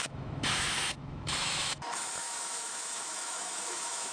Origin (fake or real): fake